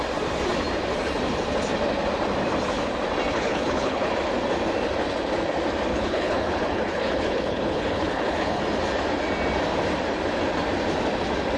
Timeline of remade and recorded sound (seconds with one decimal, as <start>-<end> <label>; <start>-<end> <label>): 0.0-3.3 recorded; 3.3-4.1 remade; 4.1-5.9 recorded; 5.9-8.6 remade; 8.6-11.6 recorded